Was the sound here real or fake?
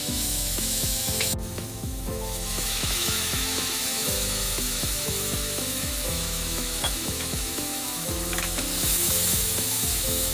fake